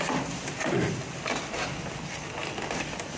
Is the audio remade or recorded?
recorded